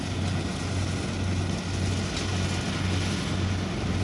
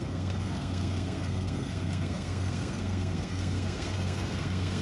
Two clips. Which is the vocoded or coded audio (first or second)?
second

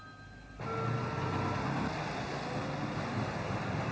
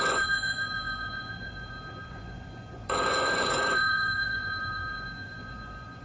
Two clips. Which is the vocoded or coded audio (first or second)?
second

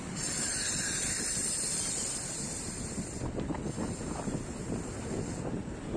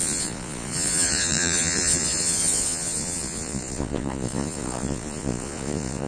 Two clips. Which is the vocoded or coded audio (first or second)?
second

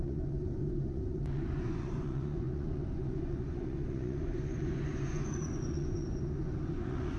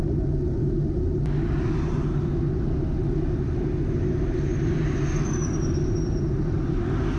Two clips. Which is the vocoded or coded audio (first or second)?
first